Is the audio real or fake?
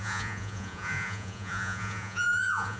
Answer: fake